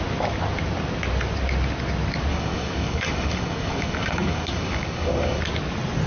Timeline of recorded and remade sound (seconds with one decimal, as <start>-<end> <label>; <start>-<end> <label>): 0.0-2.3 recorded; 2.3-5.4 remade; 5.4-6.1 recorded